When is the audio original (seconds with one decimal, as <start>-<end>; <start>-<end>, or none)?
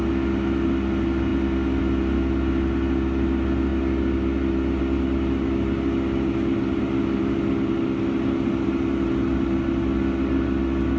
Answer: 0.0-11.0